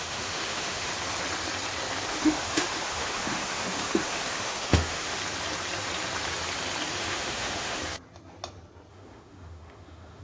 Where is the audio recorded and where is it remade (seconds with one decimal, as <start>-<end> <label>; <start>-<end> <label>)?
0.0-0.9 remade; 0.9-2.1 recorded; 2.1-5.2 remade; 5.2-7.0 recorded; 7.0-7.8 remade; 7.8-8.9 recorded; 8.9-10.2 remade